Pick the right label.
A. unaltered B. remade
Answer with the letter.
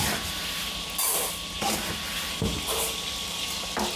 A